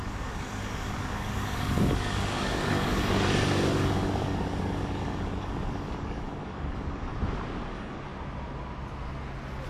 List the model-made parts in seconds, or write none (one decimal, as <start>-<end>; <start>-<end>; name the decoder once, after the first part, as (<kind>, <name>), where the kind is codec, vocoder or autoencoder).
0.0-7.1 (codec, DAC); 7.7-8.1